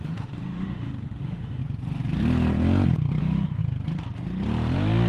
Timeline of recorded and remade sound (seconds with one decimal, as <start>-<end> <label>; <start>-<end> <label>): 0.0-1.6 remade; 1.6-3.2 recorded; 3.2-3.6 remade; 3.6-5.1 recorded